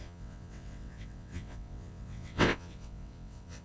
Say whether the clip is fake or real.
fake